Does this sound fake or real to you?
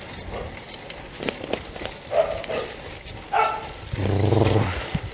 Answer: real